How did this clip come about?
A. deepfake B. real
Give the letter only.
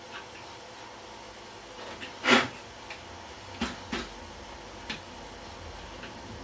B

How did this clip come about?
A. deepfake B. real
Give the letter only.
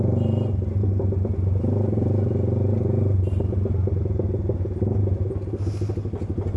B